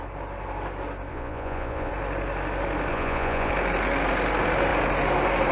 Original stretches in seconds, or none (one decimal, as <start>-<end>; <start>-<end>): 0.0-1.1; 1.9-2.9; 3.5-5.5